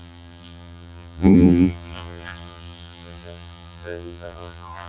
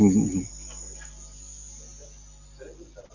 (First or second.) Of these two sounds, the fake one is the first